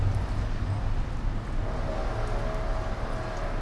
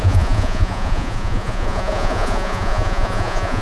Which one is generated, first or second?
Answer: second